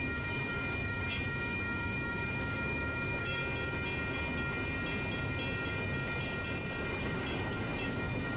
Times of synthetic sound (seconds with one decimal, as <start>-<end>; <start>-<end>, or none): 0.0-3.4; 6.9-8.4